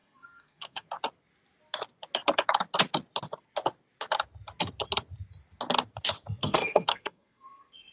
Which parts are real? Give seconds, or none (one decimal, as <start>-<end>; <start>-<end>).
0.9-6.4

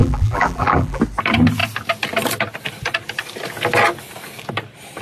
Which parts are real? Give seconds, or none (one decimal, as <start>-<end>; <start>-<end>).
1.0-5.0

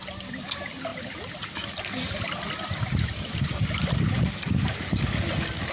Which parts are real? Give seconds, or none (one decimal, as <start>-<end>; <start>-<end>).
0.0-5.7

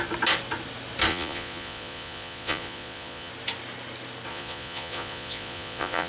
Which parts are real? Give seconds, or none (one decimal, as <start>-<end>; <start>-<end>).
0.0-1.1; 3.3-4.3